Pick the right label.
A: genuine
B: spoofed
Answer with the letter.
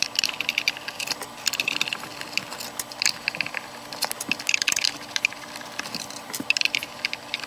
B